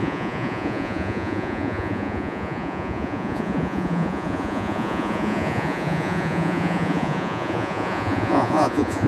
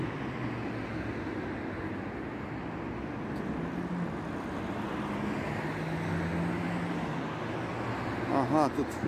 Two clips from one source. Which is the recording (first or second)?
second